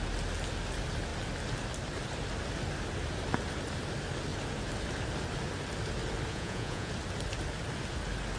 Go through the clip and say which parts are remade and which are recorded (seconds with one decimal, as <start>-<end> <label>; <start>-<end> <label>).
0.0-6.3 recorded; 6.3-6.9 remade; 6.9-8.4 recorded